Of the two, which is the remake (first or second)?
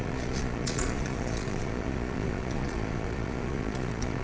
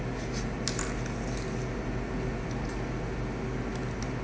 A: first